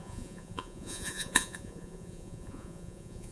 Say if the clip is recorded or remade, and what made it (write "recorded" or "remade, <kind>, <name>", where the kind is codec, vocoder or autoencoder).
remade, vocoder, Vocos